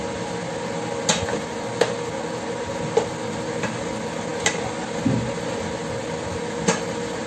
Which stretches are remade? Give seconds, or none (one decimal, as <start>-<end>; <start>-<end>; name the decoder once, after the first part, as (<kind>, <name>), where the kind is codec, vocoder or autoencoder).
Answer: none